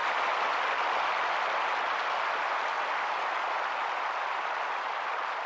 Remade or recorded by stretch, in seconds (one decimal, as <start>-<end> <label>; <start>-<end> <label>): 0.0-5.5 recorded